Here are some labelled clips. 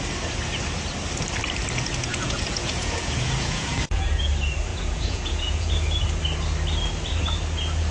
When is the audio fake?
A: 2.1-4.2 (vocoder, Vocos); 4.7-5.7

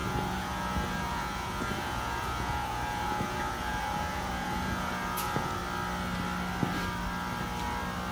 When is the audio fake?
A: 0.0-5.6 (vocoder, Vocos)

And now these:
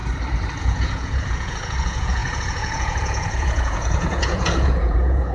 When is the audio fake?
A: 0.6-5.3 (vocoder, Vocos)

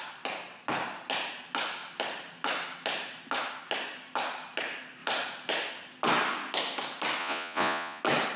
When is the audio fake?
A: 7.2-8.0 (vocoder, Vocos)